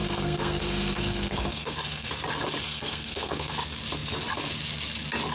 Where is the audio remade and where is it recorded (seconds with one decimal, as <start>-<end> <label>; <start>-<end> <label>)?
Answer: 0.0-2.1 remade; 2.1-2.6 recorded; 2.6-3.5 remade; 3.5-5.3 recorded